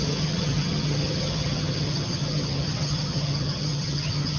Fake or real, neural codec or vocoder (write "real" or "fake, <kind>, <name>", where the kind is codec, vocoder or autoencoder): fake, vocoder, HiFi-GAN